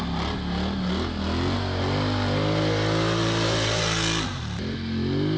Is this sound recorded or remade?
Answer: recorded